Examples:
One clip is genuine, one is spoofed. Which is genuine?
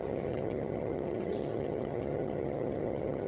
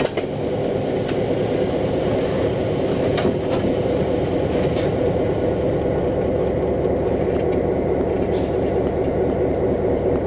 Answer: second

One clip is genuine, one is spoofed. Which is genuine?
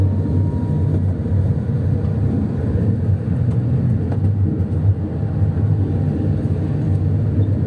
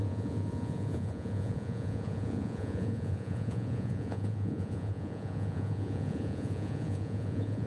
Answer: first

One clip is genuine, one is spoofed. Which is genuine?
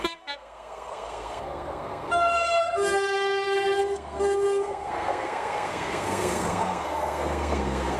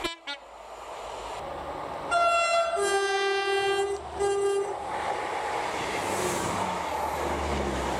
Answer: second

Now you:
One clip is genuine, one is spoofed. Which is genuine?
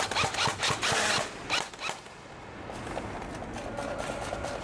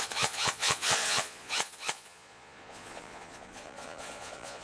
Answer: first